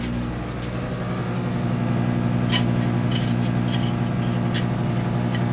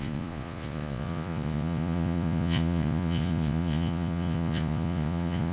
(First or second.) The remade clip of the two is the second